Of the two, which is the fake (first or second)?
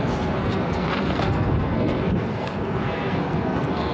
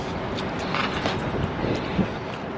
first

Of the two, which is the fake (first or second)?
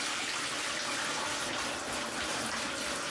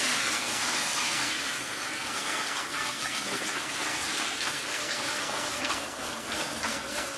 second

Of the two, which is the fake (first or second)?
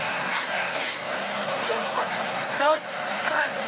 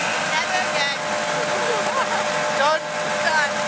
first